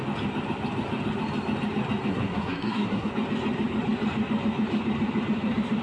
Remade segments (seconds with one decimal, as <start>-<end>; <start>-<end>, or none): 2.1-3.1